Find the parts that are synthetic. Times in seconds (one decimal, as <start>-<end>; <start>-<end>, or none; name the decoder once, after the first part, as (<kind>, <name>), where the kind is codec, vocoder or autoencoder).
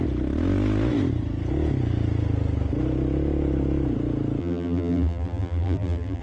4.4-6.2 (vocoder, BigVGAN v2)